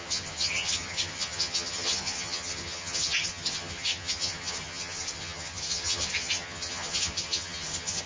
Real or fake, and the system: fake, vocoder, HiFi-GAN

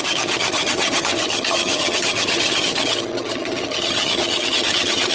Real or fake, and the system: fake, vocoder, HiFi-GAN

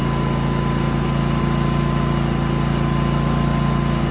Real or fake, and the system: real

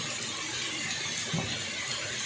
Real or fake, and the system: real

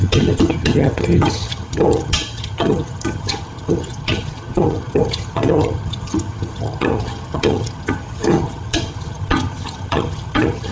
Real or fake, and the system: fake, vocoder, HiFi-GAN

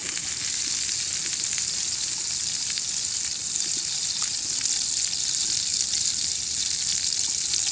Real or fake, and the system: real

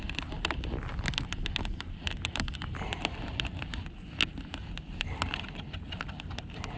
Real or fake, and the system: real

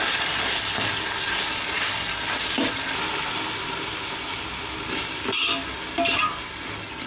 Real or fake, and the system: real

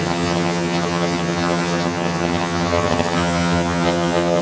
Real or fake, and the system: fake, vocoder, HiFi-GAN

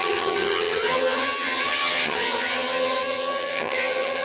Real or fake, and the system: fake, vocoder, HiFi-GAN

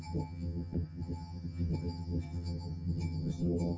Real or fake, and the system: fake, vocoder, HiFi-GAN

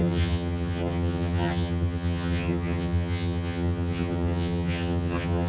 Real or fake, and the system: fake, vocoder, HiFi-GAN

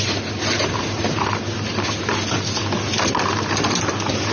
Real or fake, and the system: real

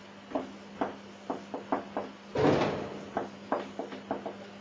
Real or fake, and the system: real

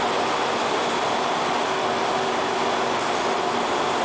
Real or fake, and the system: real